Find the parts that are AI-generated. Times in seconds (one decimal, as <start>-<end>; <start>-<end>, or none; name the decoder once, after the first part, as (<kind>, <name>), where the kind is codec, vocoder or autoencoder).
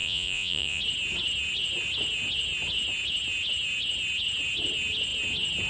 0.0-0.8 (vocoder, Vocos)